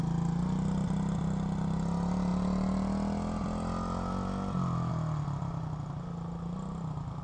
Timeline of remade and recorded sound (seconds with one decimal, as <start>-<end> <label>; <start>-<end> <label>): 0.0-7.2 recorded